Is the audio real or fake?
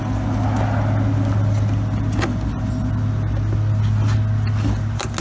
real